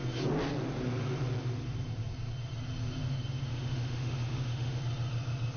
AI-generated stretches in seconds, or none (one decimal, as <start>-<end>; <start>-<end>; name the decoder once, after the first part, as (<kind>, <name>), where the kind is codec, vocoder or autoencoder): 3.5-4.8 (autoencoder, DAC-VAE)